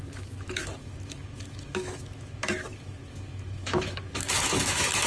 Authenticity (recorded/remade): remade